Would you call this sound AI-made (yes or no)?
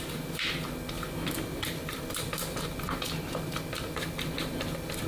yes